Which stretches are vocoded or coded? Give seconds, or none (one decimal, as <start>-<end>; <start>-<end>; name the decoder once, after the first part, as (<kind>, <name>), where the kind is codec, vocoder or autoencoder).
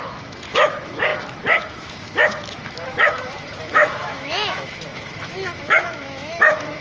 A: 0.0-6.8 (autoencoder, DAC-VAE)